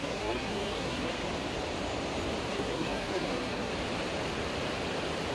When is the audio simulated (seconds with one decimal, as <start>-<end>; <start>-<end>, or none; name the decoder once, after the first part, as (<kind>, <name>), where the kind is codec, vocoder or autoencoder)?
0.0-1.2 (codec, SNAC); 2.5-3.7